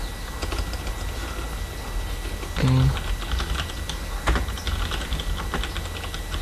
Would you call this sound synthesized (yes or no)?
no